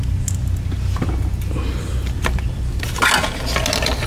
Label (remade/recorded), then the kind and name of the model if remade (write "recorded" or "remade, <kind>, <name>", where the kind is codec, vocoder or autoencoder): recorded